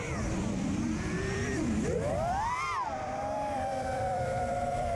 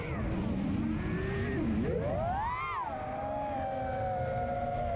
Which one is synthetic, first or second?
first